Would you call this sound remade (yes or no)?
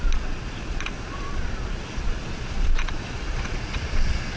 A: yes